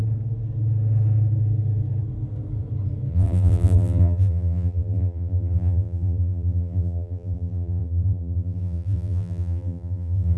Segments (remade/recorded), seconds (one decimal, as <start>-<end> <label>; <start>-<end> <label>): 0.0-3.1 recorded; 3.1-10.4 remade